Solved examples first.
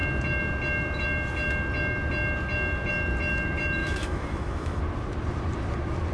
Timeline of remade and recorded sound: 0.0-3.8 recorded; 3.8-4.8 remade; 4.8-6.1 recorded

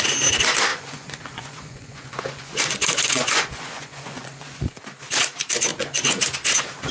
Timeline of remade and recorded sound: 0.0-0.7 recorded; 0.7-4.8 remade; 4.8-5.7 recorded; 5.7-6.2 remade; 6.2-6.9 recorded

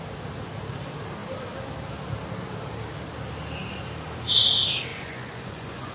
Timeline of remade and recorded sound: 0.0-4.9 recorded; 4.9-5.9 remade